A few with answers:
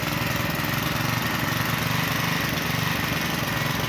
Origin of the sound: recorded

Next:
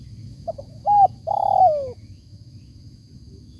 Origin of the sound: remade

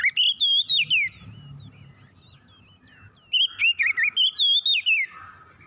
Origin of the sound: recorded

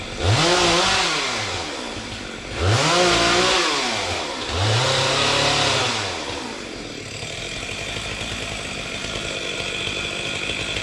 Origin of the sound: recorded